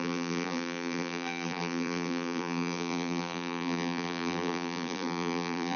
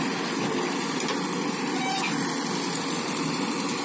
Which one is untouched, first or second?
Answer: second